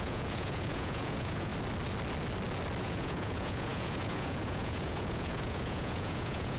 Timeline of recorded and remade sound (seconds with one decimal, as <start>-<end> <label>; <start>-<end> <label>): 0.0-1.5 remade; 1.5-2.8 recorded; 2.8-6.6 remade